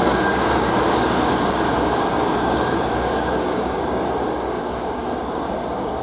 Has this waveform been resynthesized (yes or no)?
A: yes